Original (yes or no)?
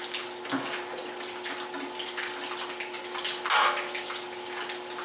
yes